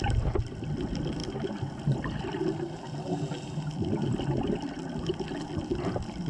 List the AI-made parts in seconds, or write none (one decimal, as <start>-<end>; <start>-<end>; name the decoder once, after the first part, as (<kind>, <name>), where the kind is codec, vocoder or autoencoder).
none